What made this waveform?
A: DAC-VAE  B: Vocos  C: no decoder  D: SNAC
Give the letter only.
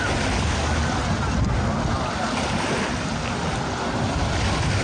C